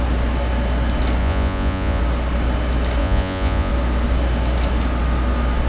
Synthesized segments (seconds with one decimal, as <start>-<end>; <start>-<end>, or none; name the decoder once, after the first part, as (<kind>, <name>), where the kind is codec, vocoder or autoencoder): 1.2-2.0 (vocoder, Vocos); 3.0-3.7